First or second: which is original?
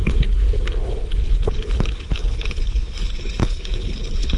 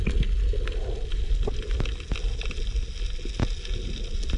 second